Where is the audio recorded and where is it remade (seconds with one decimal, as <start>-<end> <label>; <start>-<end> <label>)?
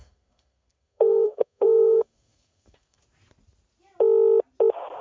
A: 0.0-3.0 remade; 3.0-5.0 recorded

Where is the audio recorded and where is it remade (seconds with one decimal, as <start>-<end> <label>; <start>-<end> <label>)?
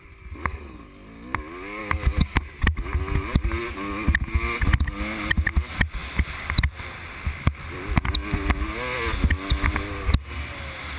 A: 0.0-1.8 recorded; 1.8-2.4 remade; 2.4-11.0 recorded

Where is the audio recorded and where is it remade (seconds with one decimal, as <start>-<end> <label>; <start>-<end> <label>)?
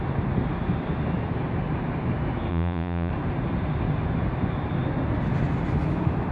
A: 0.0-2.5 recorded; 2.5-3.1 remade; 3.1-6.3 recorded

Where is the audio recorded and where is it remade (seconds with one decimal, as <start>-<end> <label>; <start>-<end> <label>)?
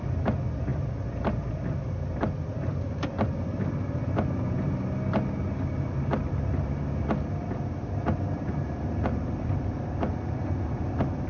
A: 0.0-11.3 recorded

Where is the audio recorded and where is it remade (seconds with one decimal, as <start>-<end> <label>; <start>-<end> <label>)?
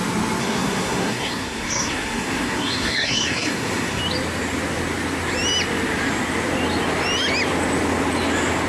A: 0.0-0.4 recorded; 0.4-4.0 remade; 4.0-8.7 recorded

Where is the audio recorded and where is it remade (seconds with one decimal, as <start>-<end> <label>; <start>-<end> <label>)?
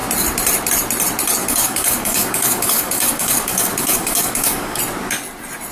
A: 0.0-1.4 recorded; 1.4-4.8 remade; 4.8-5.7 recorded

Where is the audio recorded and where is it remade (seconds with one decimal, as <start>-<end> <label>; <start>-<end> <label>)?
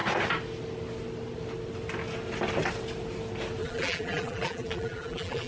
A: 0.0-3.6 recorded; 3.6-5.5 remade